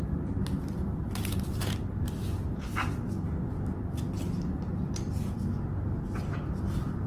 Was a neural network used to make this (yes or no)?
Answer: no